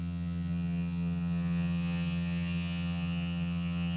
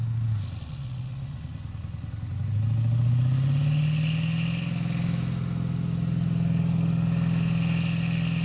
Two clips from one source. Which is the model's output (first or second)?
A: first